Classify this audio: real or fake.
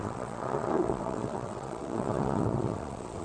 fake